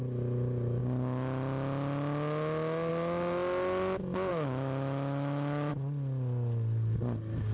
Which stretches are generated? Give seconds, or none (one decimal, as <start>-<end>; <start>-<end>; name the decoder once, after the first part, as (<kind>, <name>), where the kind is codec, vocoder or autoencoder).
4.3-5.7 (autoencoder, DAC-VAE)